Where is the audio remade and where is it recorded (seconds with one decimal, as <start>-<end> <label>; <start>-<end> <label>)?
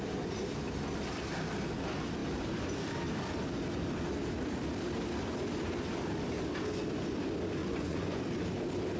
0.0-7.6 recorded; 7.6-8.2 remade; 8.2-9.0 recorded